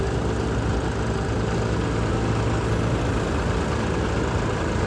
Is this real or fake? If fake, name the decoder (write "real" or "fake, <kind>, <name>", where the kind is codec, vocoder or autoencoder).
real